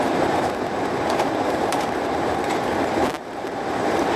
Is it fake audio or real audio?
fake